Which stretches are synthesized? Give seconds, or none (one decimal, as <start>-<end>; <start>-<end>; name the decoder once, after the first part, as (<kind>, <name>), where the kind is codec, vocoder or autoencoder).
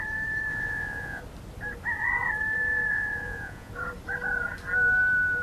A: 0.5-1.2 (vocoder, Vocos); 2.9-3.7